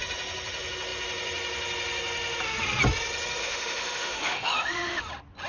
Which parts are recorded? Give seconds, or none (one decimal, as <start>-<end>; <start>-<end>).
0.0-3.4; 5.0-5.5